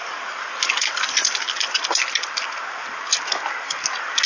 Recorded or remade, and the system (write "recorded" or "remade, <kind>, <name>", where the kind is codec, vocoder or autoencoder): recorded